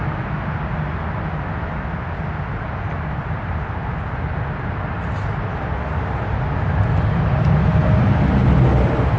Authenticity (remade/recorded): recorded